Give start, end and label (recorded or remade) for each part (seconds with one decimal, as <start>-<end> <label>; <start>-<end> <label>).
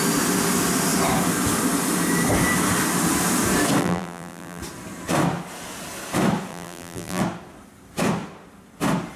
0.0-3.8 recorded; 3.8-4.6 remade; 4.6-6.5 recorded; 6.5-7.2 remade; 7.2-9.2 recorded